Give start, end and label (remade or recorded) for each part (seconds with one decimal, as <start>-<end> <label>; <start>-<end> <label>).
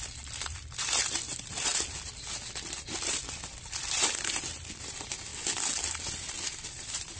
0.0-1.7 remade; 1.7-3.3 recorded; 3.3-5.3 remade; 5.3-6.0 recorded; 6.0-7.2 remade